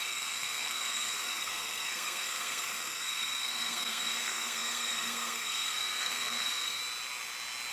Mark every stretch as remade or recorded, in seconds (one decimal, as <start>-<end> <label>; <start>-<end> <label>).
0.0-6.8 remade; 6.8-7.7 recorded